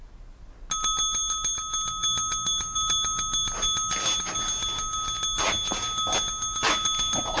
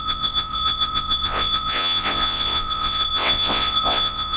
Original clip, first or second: first